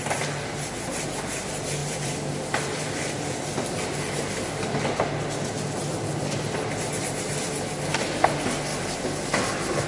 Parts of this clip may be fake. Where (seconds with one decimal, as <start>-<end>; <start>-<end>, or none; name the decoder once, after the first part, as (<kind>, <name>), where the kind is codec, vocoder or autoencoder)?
1.8-5.0 (vocoder, BigVGAN v2); 8.7-9.4